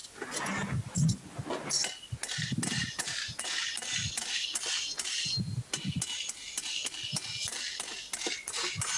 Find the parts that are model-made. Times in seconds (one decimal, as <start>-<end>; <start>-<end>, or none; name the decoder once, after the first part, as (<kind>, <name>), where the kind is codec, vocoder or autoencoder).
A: none